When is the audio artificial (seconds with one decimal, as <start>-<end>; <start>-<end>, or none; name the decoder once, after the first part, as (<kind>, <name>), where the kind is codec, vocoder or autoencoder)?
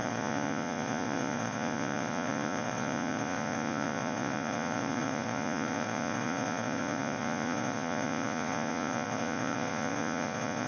0.0-10.7 (vocoder, Vocos)